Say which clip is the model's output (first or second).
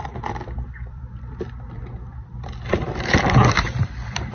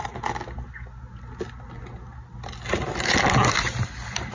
first